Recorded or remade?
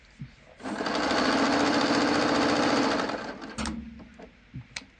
recorded